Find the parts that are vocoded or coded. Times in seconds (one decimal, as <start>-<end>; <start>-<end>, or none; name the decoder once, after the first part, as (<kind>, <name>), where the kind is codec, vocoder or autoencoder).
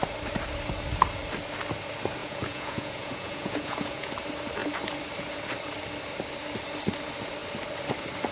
2.2-4.1 (vocoder, Vocos)